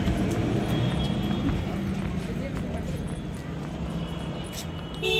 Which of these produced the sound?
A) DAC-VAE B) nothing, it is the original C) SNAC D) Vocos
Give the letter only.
B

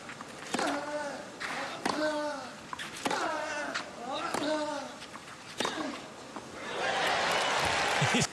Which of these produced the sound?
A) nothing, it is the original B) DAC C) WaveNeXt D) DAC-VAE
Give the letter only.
A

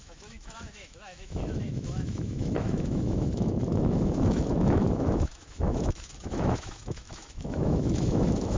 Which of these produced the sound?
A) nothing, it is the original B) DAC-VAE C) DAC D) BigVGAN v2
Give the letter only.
B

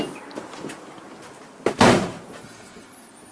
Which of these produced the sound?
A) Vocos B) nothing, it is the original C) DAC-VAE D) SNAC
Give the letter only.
B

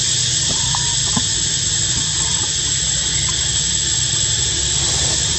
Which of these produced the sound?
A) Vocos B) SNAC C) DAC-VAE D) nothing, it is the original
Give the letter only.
D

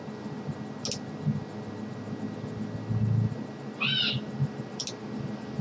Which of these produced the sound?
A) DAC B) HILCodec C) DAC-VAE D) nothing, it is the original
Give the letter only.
D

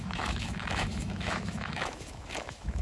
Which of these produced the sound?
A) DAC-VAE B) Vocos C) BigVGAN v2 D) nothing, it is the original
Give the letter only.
A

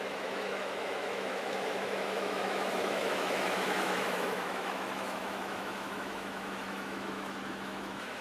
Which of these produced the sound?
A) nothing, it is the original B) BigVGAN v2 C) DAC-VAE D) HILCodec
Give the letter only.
C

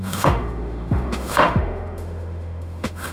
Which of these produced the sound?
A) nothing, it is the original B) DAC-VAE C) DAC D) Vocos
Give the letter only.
B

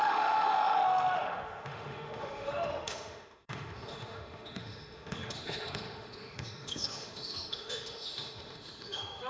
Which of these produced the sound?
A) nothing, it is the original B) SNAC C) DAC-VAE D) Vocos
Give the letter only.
C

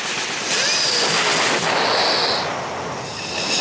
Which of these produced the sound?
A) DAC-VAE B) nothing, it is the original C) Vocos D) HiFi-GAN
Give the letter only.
B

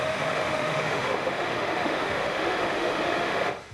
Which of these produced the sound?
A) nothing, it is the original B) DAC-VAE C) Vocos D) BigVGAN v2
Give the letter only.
B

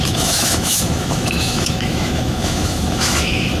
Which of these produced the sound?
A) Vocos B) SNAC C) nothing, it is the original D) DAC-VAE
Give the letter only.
D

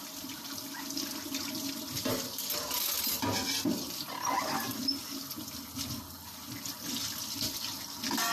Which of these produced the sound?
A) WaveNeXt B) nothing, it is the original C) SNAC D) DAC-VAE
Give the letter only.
B